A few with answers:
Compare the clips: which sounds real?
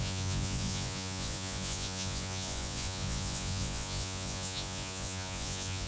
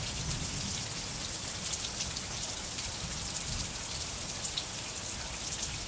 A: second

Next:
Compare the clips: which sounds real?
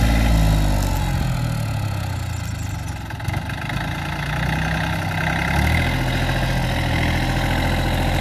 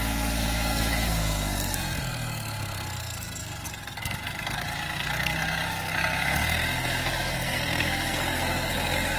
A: first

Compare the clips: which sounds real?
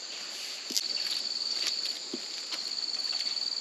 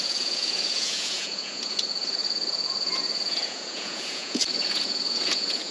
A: first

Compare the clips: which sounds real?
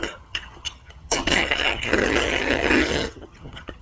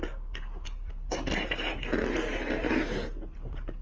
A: second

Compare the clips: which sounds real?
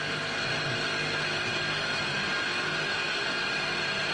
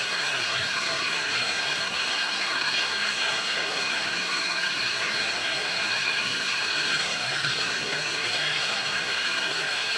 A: first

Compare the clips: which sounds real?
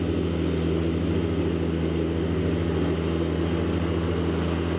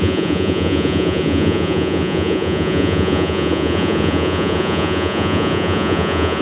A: first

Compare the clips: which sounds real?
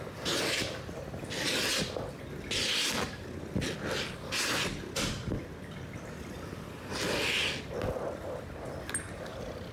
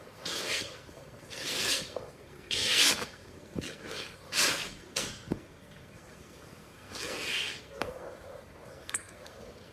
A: first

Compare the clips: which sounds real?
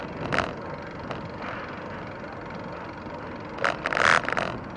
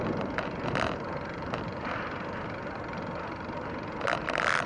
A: first